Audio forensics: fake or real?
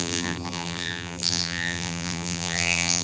fake